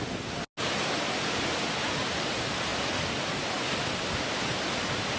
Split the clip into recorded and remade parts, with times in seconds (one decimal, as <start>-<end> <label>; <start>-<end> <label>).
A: 0.0-5.2 recorded